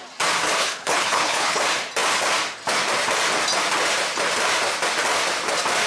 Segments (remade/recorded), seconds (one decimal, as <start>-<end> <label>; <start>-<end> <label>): 0.0-0.6 recorded; 0.6-1.6 remade; 1.6-5.9 recorded

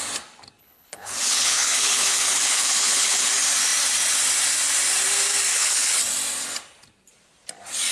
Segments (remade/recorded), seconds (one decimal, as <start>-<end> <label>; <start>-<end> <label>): 0.0-0.6 recorded; 0.6-3.3 remade; 3.3-5.5 recorded; 5.5-6.0 remade; 6.0-7.9 recorded

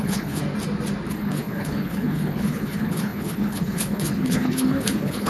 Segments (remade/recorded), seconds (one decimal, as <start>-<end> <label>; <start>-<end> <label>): 0.0-0.4 remade; 0.4-1.1 recorded; 1.1-5.3 remade

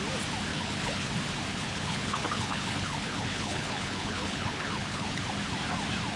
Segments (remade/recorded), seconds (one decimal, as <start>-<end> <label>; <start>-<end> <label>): 0.0-0.5 recorded; 0.5-1.1 remade; 1.1-1.5 recorded; 1.5-5.2 remade; 5.2-6.2 recorded

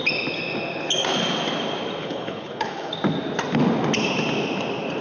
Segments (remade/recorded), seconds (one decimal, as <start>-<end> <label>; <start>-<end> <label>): 0.0-2.0 recorded; 2.0-2.9 remade; 2.9-5.0 recorded